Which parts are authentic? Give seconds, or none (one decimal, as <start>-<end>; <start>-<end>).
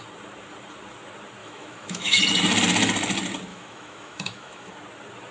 0.0-1.4; 2.2-3.5; 4.7-5.3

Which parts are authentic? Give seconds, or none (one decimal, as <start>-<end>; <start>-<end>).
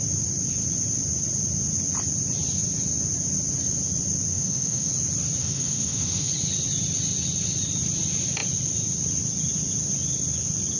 0.0-4.3; 4.9-5.4; 6.3-10.8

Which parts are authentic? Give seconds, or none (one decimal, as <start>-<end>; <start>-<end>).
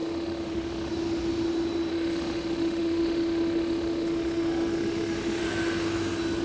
0.9-1.9; 5.4-6.4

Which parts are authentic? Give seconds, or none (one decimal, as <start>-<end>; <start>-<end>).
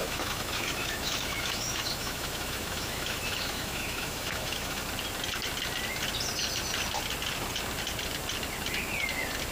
4.8-9.5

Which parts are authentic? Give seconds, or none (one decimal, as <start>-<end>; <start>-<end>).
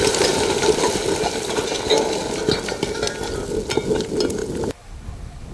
0.0-5.5